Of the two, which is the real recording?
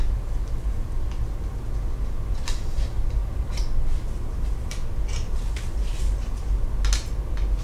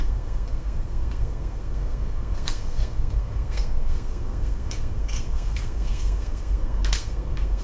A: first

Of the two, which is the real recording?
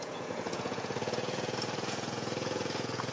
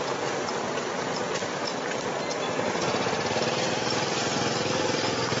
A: second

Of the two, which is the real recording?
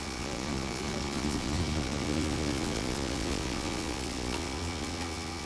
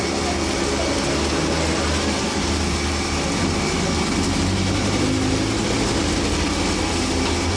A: second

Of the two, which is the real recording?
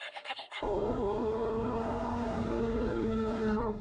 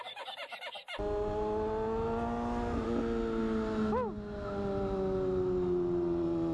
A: second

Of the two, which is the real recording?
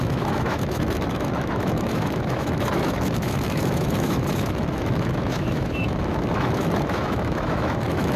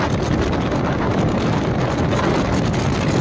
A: second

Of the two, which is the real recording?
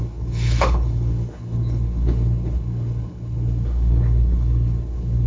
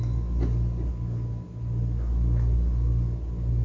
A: second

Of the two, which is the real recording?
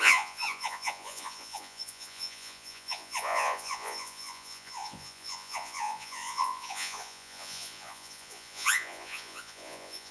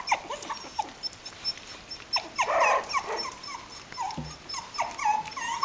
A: second